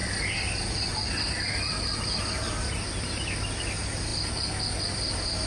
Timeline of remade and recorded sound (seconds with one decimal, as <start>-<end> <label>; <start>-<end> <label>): 0.0-5.5 recorded